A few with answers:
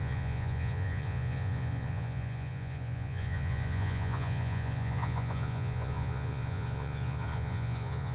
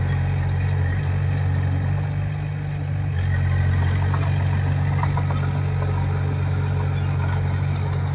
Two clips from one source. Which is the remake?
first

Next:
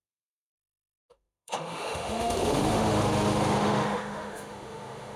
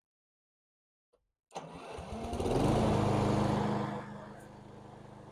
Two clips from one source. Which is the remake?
first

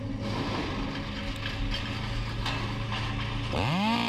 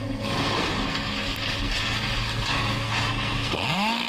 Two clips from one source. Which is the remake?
second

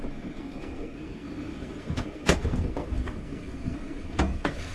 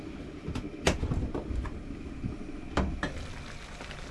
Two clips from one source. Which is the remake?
first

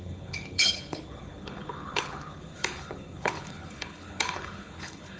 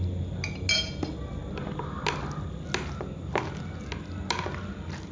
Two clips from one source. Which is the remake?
first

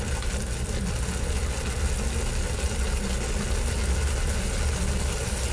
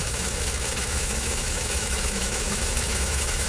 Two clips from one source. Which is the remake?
second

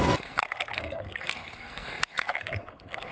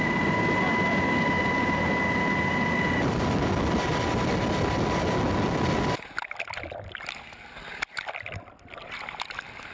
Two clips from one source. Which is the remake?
first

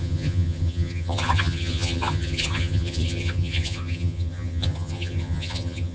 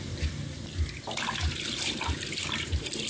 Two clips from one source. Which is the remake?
first